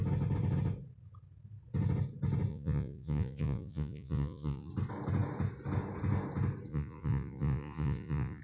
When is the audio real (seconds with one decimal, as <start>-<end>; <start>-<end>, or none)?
0.0-2.5; 4.7-6.7